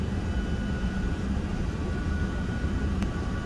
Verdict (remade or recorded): recorded